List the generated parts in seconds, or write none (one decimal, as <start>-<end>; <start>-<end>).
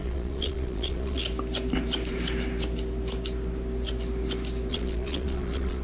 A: 0.0-1.2; 4.7-5.8